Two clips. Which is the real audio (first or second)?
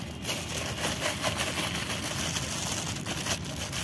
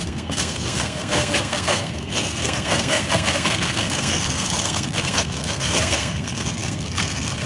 first